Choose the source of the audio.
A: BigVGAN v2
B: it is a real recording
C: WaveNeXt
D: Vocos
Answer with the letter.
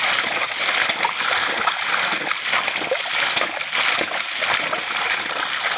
B